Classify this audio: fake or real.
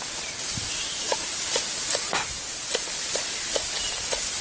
real